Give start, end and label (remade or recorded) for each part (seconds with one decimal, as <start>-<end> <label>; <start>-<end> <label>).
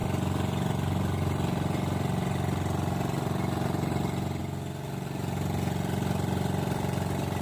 0.0-7.4 recorded